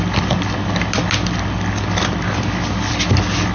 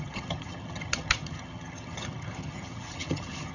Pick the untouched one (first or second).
first